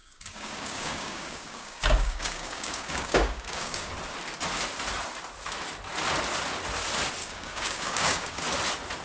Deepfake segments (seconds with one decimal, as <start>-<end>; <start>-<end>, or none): 0.0-3.9; 7.2-8.4